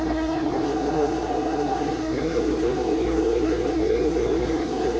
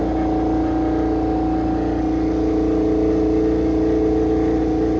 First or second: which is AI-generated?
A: first